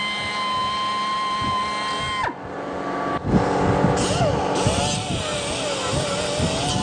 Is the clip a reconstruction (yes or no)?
no